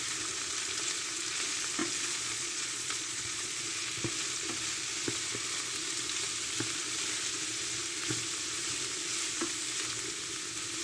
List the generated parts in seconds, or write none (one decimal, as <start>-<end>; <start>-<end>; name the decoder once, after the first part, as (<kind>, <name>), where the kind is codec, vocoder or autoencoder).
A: 1.8-3.7 (vocoder, Vocos)

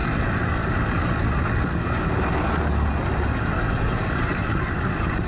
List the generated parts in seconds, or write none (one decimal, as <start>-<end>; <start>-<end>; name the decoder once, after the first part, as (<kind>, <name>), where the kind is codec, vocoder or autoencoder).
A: none

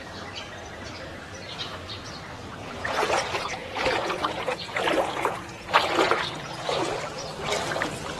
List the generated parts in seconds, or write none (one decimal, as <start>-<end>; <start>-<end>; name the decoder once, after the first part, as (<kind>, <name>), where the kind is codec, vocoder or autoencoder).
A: 2.6-6.9 (vocoder, Vocos)

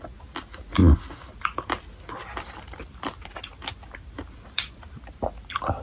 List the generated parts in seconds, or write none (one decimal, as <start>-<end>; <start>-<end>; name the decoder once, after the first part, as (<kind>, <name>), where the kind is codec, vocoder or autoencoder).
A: none

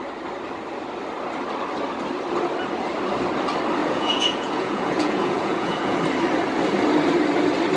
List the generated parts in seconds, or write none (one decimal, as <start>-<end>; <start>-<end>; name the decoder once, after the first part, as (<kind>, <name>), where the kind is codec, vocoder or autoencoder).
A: 3.8-6.0 (vocoder, Vocos)